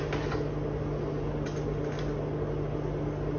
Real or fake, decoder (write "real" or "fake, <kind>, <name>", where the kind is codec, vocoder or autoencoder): real